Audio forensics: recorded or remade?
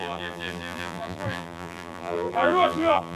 remade